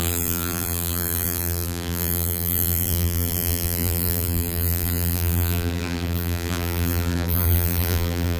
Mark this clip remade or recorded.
remade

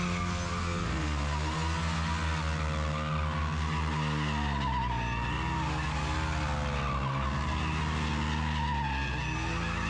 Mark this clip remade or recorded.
recorded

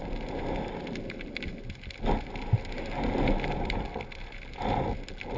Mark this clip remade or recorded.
recorded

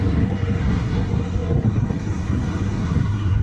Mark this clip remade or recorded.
remade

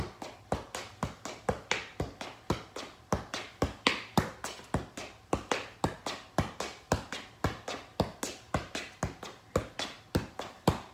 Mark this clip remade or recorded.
recorded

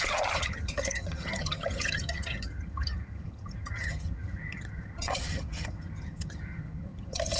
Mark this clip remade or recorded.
remade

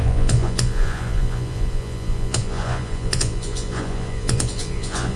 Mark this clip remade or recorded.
remade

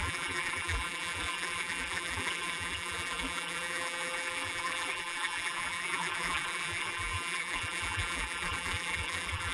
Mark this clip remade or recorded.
remade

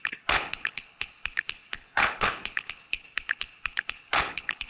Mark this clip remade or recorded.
remade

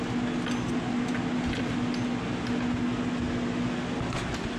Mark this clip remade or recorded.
recorded